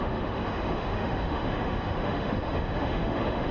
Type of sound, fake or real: fake